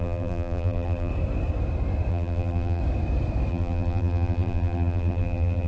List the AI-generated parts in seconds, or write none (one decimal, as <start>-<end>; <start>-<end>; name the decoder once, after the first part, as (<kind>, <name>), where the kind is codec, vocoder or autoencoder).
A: 0.0-1.1 (vocoder, BigVGAN v2); 2.1-2.8; 3.5-5.7